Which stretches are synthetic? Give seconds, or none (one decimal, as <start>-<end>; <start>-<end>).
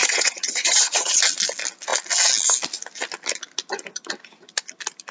0.0-1.2